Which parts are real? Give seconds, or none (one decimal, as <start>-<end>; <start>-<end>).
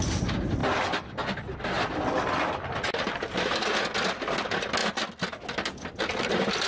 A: 0.0-4.8; 6.2-6.7